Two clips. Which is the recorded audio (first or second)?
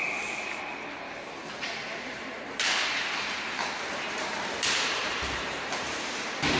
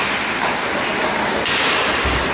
second